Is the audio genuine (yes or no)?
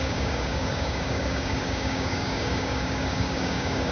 no